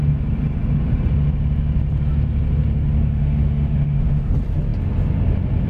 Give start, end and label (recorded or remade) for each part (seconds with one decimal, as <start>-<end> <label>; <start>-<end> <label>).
0.0-3.0 recorded; 3.0-4.3 remade; 4.3-5.7 recorded